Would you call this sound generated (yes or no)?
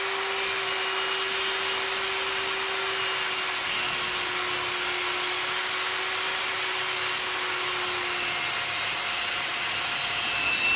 no